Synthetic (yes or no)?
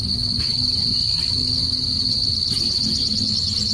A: no